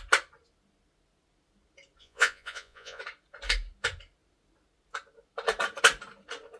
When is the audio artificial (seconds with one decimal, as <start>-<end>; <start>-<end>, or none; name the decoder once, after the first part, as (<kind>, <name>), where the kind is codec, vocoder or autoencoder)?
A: 2.0-3.0 (vocoder, Vocos)

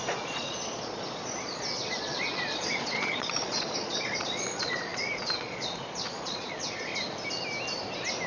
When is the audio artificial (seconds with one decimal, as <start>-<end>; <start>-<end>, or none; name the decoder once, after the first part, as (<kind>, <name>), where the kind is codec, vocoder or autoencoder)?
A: 0.0-6.9 (vocoder, Vocos)

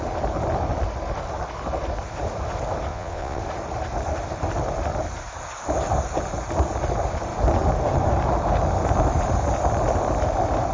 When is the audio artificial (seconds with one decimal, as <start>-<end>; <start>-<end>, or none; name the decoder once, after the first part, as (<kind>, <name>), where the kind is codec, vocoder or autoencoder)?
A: 2.9-3.4 (vocoder, Vocos)

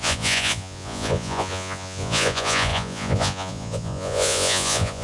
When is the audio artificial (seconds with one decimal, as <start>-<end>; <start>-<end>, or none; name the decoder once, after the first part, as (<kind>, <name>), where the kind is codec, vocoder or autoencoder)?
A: 0.0-5.0 (vocoder, Vocos)

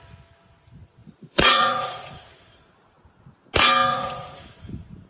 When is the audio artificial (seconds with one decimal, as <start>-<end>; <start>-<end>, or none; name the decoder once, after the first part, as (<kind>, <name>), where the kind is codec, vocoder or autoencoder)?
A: 1.0-3.3 (vocoder, Vocos); 3.9-5.1

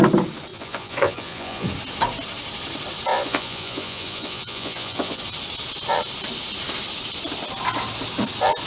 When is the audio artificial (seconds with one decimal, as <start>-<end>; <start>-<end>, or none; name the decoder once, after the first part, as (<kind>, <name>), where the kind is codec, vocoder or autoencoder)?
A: 0.5-1.7 (vocoder, Vocos); 3.1-5.2